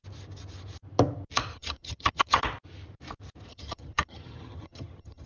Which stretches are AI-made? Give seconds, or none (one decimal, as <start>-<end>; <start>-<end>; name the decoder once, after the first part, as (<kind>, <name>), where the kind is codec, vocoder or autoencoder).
1.5-2.4 (vocoder, HiFi-GAN); 3.5-5.3